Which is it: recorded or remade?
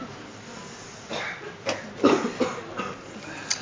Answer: recorded